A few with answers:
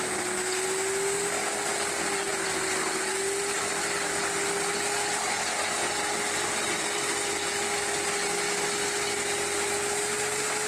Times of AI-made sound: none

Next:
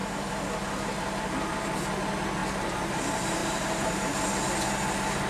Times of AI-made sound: 0.0-1.5 (vocoder, BigVGAN v2); 2.4-3.0; 3.4-4.3

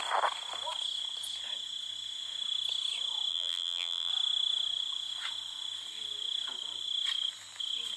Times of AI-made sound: 3.3-4.1 (vocoder, BigVGAN v2)

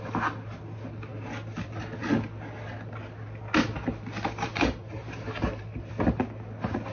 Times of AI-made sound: 4.5-5.9 (vocoder, BigVGAN v2)

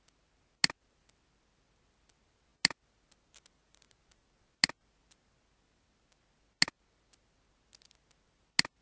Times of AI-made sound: none

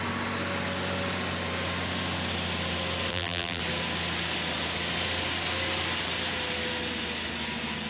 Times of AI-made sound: 3.1-3.6 (vocoder, BigVGAN v2)

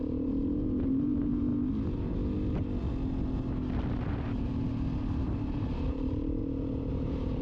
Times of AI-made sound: 0.0-1.5 (vocoder, BigVGAN v2); 5.9-6.4; 6.9-7.4